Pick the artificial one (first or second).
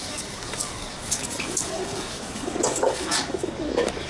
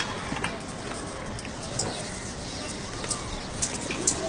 first